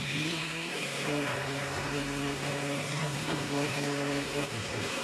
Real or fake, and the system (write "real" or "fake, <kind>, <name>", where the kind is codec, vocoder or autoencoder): fake, codec, SNAC